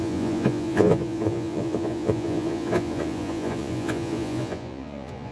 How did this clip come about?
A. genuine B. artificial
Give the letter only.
B